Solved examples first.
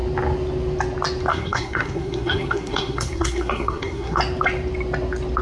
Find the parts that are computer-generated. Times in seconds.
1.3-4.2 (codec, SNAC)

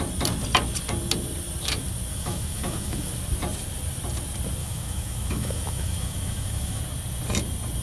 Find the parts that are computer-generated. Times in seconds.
2.1-3.1 (autoencoder, DAC-VAE); 4.6-6.8

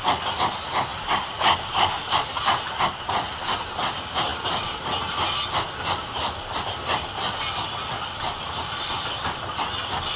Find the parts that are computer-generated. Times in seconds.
none